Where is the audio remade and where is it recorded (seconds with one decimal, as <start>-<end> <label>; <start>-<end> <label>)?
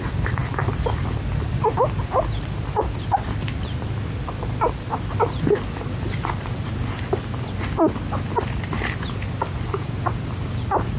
0.0-11.0 recorded